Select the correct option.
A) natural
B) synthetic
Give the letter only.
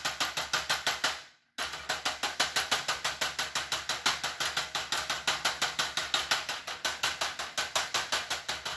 A